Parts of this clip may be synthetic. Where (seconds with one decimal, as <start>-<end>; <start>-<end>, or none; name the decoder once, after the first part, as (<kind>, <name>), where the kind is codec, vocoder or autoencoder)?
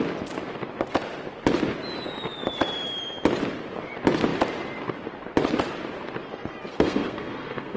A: 6.7-7.8 (codec, SNAC)